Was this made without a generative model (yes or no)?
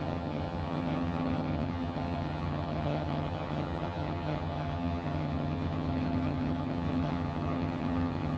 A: no